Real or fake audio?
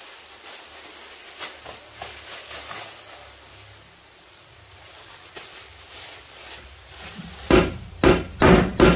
real